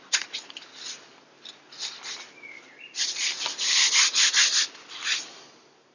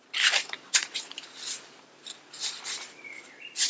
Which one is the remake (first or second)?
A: second